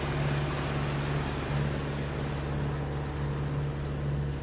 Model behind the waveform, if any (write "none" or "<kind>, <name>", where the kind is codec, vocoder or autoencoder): none